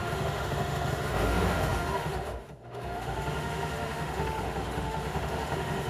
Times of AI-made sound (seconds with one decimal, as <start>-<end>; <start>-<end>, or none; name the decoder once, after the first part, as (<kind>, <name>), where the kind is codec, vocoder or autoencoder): 0.0-5.9 (autoencoder, DAC-VAE)